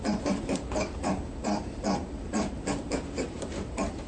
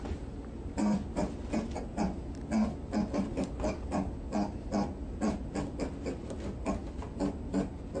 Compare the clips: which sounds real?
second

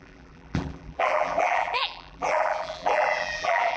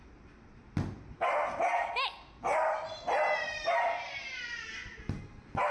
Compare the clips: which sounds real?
second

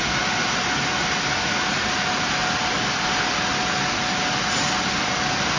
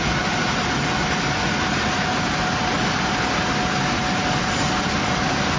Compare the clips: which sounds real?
first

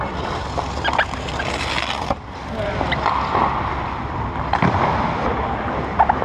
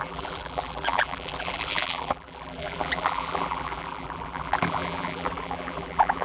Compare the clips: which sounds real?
first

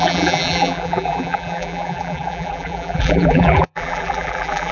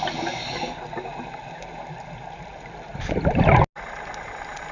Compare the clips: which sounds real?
second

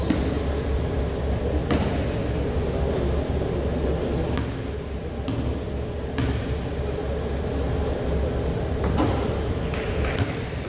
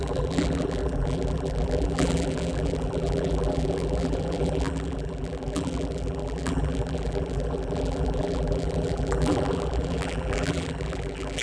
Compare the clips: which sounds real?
first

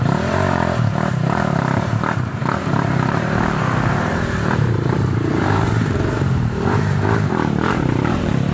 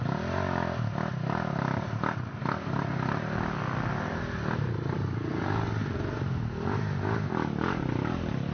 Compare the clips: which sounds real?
second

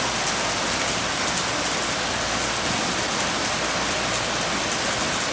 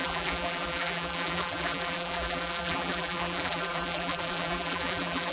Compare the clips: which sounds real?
first